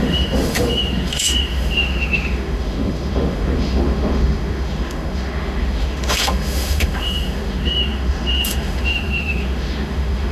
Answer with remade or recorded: remade